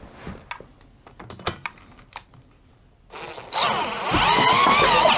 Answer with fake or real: real